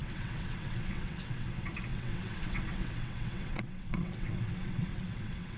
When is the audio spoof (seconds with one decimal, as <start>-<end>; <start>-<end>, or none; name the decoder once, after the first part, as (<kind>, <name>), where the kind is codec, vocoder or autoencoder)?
0.0-1.5 (vocoder, WaveNeXt); 1.9-5.6